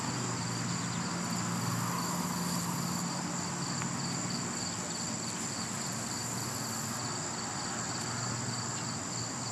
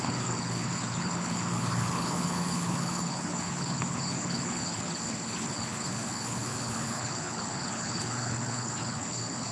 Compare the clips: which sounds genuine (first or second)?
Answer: first